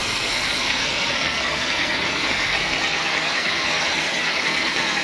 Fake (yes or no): yes